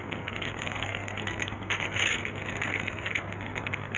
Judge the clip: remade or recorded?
remade